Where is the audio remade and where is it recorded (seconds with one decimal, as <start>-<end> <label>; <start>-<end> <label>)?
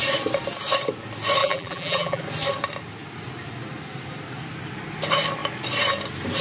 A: 0.0-1.4 recorded; 1.4-2.2 remade; 2.2-6.4 recorded